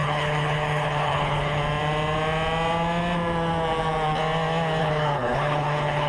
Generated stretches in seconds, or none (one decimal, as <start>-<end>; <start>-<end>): 0.0-1.6; 4.8-6.1

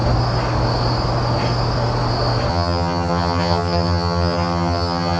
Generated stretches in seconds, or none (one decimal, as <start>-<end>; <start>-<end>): 2.5-5.2

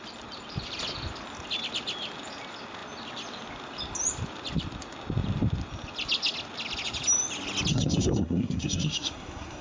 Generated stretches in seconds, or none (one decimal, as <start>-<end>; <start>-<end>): 7.7-9.6